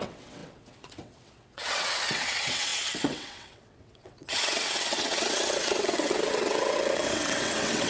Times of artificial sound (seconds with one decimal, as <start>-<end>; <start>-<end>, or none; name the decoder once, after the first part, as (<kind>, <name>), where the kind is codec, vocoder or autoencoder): 0.0-7.9 (vocoder, WaveNeXt)